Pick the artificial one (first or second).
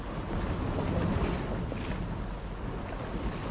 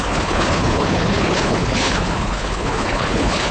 second